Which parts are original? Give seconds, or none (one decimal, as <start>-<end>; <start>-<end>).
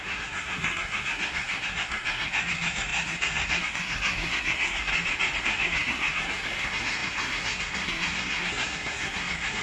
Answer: 4.9-5.4